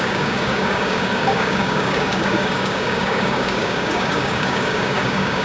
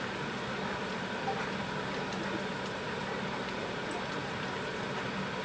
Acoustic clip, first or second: second